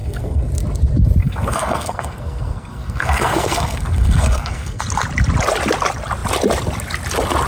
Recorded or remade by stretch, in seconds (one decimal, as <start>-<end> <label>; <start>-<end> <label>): 0.0-0.5 remade; 0.5-1.2 recorded; 1.2-4.8 remade; 4.8-7.5 recorded